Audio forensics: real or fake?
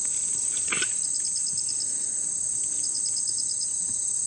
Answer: real